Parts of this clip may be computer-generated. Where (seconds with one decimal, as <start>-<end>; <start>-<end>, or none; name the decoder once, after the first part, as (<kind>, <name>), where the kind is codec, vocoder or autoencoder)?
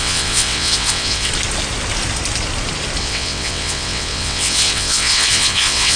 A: 0.0-1.3 (vocoder, WaveNeXt); 3.0-6.0